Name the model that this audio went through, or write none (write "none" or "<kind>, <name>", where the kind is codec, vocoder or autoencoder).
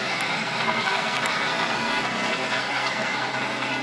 codec, SNAC